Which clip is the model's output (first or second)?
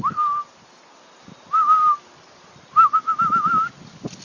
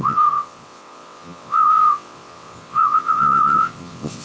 second